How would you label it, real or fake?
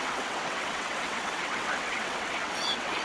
fake